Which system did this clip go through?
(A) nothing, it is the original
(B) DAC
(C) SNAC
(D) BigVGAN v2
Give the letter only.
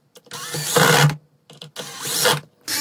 A